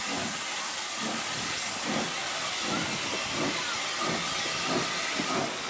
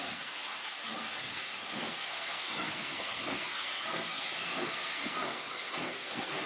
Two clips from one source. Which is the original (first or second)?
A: first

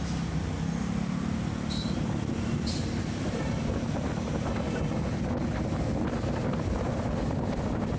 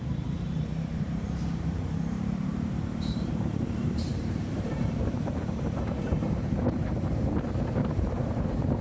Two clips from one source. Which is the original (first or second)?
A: first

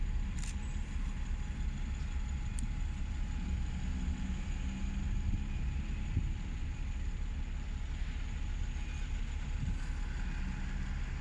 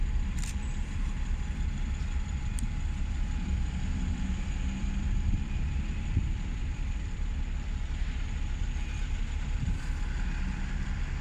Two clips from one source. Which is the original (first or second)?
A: first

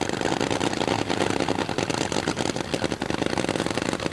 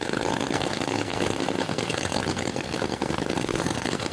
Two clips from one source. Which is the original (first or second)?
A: first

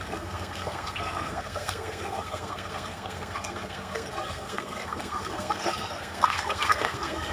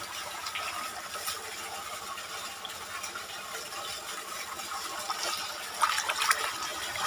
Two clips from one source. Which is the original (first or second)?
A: second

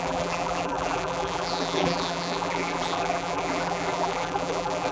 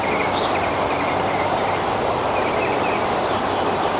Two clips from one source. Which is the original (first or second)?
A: second